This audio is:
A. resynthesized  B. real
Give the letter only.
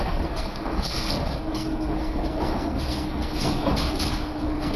A